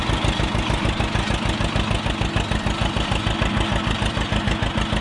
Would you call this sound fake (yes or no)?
no